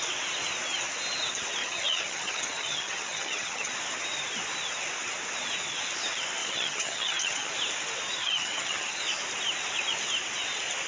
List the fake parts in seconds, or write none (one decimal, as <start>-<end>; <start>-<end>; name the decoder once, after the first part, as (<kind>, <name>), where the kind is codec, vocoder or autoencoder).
1.6-3.7 (vocoder, HiFi-GAN); 6.4-7.5; 8.2-9.0